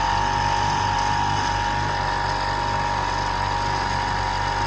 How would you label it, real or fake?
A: real